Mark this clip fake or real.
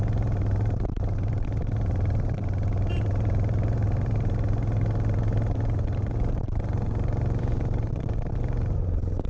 fake